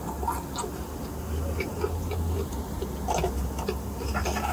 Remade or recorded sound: recorded